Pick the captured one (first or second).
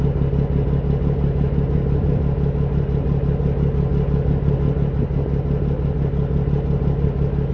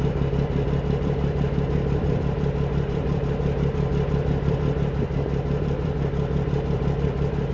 first